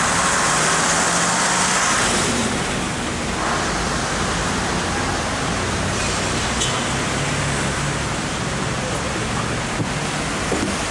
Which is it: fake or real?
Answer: real